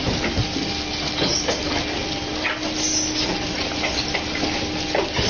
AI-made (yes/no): no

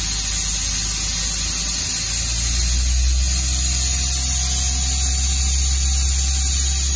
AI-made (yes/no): no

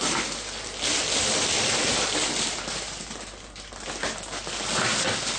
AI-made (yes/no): no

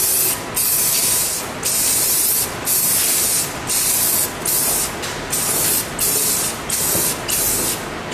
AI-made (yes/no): no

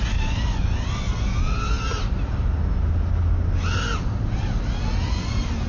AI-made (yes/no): no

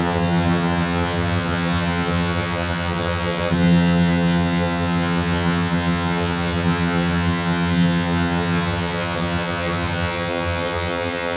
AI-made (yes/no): yes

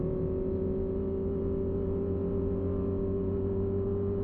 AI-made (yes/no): no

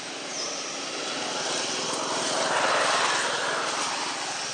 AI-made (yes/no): no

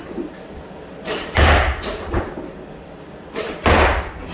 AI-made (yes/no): no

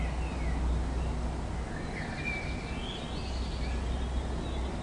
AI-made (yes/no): no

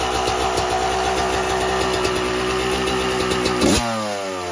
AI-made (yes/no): no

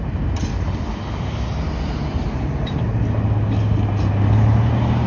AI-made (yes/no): no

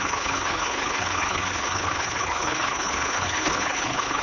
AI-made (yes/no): yes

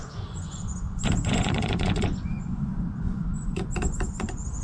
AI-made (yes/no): yes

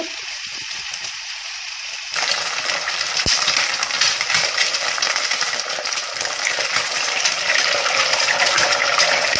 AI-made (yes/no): yes